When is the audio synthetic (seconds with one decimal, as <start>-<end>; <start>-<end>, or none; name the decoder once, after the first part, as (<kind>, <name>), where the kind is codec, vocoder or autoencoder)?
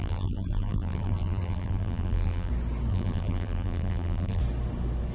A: 0.0-2.5 (vocoder, BigVGAN v2); 2.9-4.4